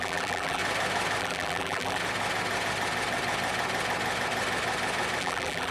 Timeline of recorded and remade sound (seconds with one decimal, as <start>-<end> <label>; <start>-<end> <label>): 0.0-0.6 remade; 0.6-1.2 recorded; 1.2-2.0 remade; 2.0-5.2 recorded; 5.2-5.7 remade